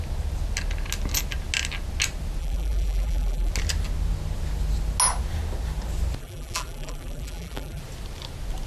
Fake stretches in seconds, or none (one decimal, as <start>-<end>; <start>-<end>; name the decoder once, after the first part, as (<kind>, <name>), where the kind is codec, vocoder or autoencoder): 2.4-3.5 (vocoder, BigVGAN v2); 6.2-7.8